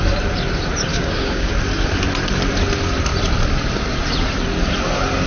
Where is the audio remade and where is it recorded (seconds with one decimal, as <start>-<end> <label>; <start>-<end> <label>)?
0.0-0.9 recorded; 0.9-1.5 remade; 1.5-5.3 recorded